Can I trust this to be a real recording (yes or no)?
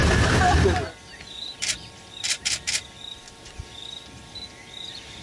yes